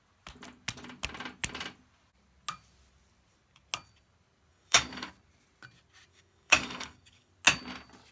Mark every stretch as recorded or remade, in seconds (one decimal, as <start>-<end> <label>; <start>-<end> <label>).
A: 0.0-4.5 recorded; 4.5-5.1 remade; 5.1-6.1 recorded; 6.1-7.3 remade; 7.3-8.1 recorded